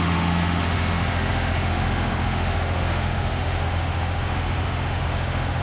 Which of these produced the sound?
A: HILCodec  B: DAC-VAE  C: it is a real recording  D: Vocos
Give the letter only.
B